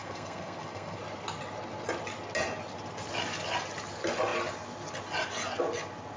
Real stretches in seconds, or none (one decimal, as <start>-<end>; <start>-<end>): 1.0-6.2